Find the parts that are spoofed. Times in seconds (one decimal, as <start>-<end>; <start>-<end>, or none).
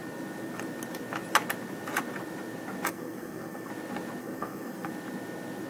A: 2.9-3.7; 4.2-4.9